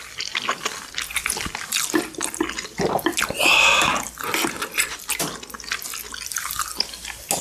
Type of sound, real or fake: real